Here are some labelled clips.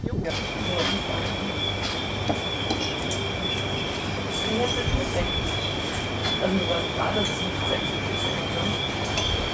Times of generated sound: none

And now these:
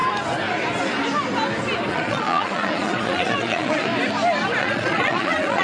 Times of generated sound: 1.9-3.9; 4.6-5.6

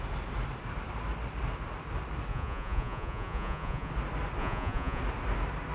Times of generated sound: 2.3-3.9; 4.4-5.0

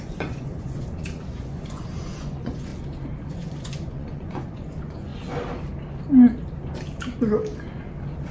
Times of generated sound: 0.0-2.7; 3.3-5.1